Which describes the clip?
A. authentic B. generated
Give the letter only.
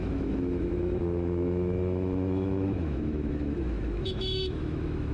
B